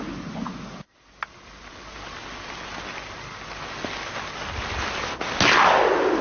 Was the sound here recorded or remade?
recorded